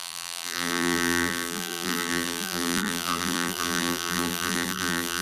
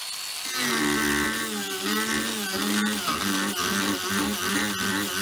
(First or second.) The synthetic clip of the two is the first